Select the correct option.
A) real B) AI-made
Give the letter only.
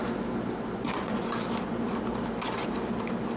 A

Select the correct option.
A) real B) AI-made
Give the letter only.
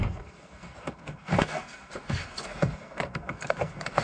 B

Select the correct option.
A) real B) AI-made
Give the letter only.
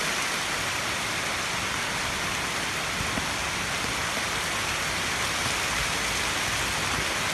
A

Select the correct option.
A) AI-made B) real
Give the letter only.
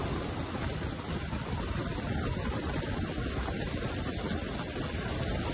B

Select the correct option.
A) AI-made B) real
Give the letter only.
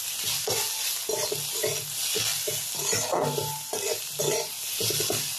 B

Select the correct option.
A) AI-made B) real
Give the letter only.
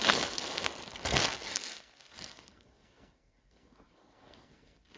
A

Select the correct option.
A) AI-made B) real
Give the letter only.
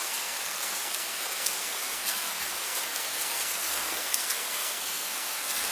A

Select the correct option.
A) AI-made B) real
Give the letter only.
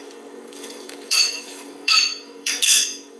A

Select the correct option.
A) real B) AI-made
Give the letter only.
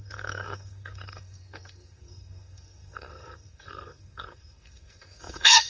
B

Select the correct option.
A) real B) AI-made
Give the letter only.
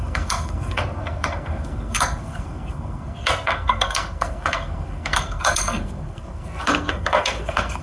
B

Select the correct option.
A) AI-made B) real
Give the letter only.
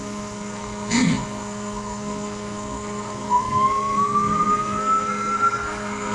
A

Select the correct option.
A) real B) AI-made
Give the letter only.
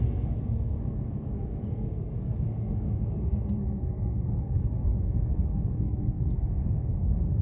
B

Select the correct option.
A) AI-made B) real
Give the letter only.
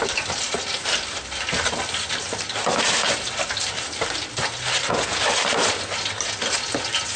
B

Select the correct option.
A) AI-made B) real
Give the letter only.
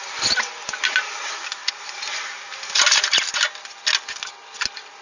B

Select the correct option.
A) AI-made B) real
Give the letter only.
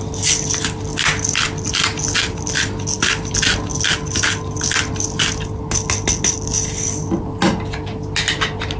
B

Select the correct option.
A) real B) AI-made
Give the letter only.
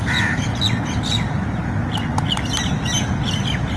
A